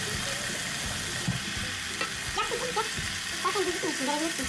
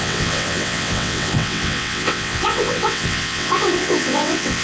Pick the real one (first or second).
first